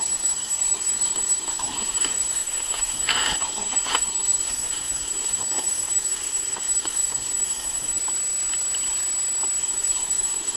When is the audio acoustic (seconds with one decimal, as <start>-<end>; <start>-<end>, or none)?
8.0-9.6